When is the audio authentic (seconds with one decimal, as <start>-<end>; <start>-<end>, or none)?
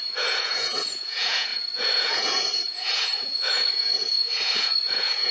none